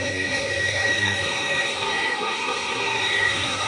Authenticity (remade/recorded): remade